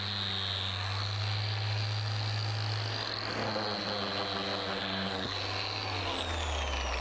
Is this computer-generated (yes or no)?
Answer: no